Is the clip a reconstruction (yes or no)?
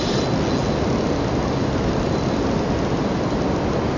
no